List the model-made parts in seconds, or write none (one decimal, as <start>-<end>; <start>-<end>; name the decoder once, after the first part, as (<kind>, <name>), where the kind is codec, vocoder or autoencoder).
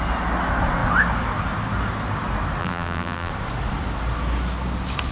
2.6-3.3 (vocoder, BigVGAN v2)